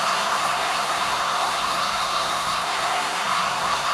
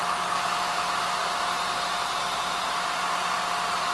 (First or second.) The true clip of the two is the second